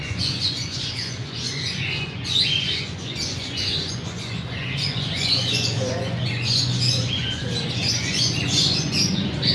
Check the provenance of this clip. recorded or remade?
remade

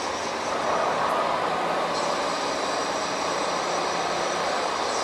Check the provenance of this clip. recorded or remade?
recorded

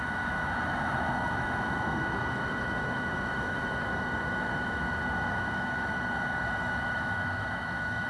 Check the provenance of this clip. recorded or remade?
remade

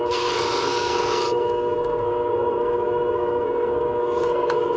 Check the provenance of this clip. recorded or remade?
remade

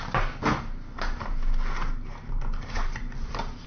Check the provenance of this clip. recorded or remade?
recorded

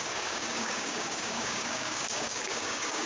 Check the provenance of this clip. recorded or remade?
remade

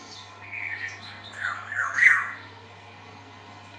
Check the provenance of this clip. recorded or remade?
remade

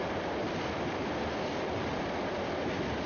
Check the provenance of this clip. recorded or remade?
recorded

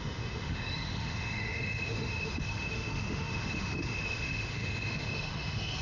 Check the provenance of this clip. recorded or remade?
remade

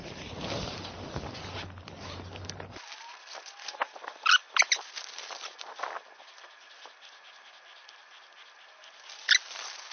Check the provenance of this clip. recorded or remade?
recorded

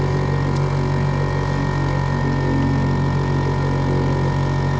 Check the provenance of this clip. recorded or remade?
recorded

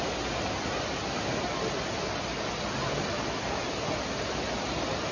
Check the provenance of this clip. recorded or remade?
recorded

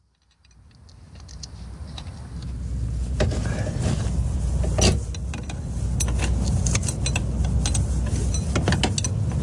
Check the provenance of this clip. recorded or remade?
recorded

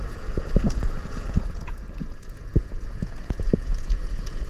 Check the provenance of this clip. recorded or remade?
remade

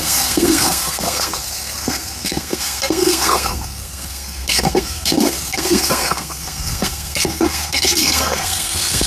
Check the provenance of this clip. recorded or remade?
remade